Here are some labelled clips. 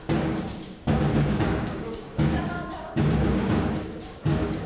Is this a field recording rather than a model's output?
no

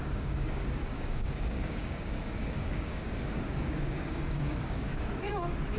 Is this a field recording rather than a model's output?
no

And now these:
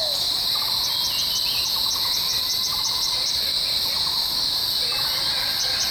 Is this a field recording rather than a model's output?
yes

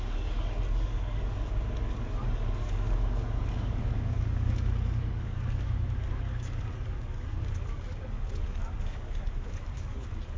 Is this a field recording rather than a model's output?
no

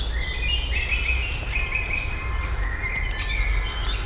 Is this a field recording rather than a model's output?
yes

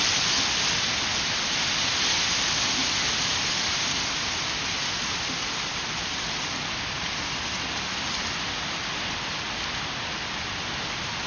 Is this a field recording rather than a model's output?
yes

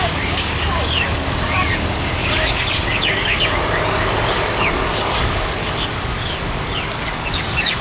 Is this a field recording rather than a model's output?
no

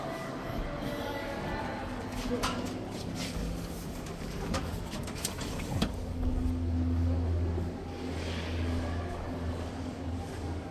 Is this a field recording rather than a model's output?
no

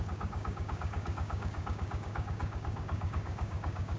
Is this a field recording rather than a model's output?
no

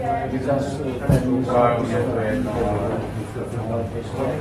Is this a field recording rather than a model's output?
yes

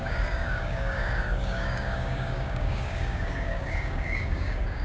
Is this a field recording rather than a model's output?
no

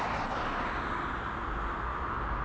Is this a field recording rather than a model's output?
yes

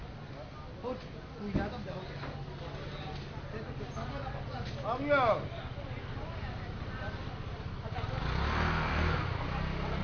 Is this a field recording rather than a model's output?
yes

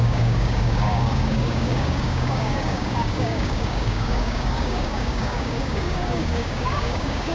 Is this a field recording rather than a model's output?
no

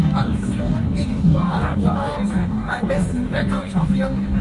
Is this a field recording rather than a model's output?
no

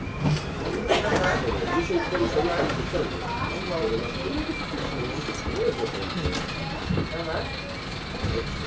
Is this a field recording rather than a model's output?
yes